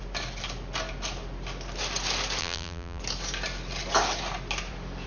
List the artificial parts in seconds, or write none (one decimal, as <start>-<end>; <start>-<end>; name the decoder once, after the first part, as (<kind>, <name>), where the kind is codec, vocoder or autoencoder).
2.4-3.0 (vocoder, BigVGAN v2)